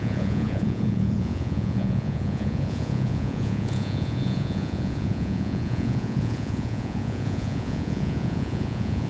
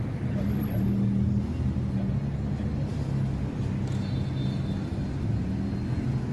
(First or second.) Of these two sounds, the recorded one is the second